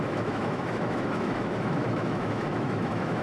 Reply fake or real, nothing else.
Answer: fake